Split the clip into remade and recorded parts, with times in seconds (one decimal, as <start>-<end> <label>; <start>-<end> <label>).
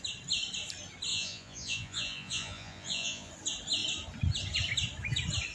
0.0-1.1 recorded; 1.1-3.3 remade; 3.3-5.5 recorded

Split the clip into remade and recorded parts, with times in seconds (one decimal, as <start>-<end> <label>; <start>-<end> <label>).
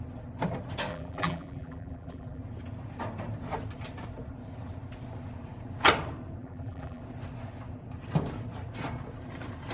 0.0-0.9 recorded; 0.9-2.4 remade; 2.4-6.4 recorded; 6.4-7.0 remade; 7.0-9.7 recorded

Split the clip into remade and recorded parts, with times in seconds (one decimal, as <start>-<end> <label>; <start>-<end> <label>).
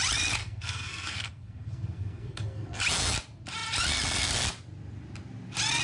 0.0-0.4 recorded; 0.4-2.8 remade; 2.8-5.8 recorded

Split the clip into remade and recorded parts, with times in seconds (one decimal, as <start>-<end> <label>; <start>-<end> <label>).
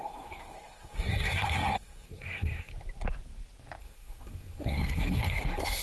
0.0-2.7 remade; 2.7-3.8 recorded; 3.8-5.8 remade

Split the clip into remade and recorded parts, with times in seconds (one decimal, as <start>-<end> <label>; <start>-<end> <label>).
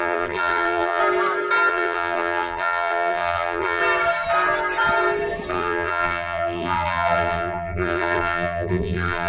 0.0-1.0 remade; 1.0-1.7 recorded; 1.7-3.8 remade; 3.8-5.5 recorded; 5.5-9.3 remade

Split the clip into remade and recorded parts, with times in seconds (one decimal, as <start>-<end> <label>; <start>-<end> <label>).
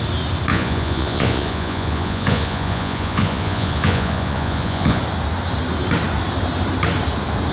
0.0-0.5 recorded; 0.5-5.0 remade; 5.0-7.5 recorded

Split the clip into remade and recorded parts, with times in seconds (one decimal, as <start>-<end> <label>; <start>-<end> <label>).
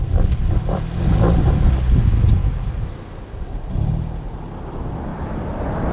0.0-5.9 recorded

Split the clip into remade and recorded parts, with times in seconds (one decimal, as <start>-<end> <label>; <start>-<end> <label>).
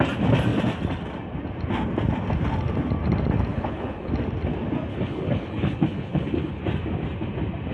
0.0-3.5 recorded; 3.5-4.1 remade; 4.1-4.9 recorded; 4.9-6.6 remade; 6.6-7.7 recorded